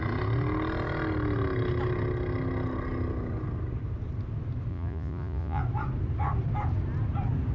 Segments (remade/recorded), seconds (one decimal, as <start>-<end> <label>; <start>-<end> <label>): 0.0-4.7 recorded; 4.7-5.6 remade; 5.6-7.5 recorded